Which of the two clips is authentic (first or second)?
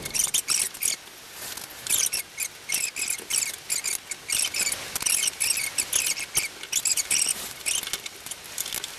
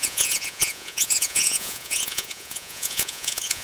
first